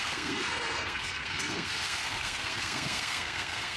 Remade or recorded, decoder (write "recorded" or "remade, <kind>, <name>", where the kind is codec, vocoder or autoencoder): remade, codec, SNAC